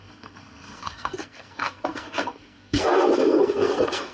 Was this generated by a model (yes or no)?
yes